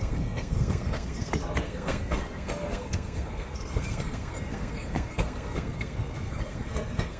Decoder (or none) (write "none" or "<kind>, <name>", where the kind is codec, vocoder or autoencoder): codec, SNAC